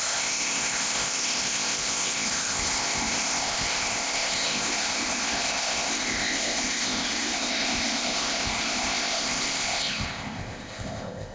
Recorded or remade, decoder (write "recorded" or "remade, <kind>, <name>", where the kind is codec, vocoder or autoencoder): remade, codec, ZipCodec